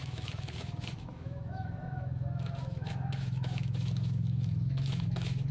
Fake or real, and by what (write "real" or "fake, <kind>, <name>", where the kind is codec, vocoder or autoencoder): fake, autoencoder, DAC-VAE